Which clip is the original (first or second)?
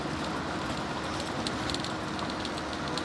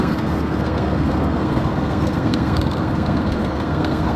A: first